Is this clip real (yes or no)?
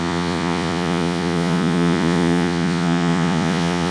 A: no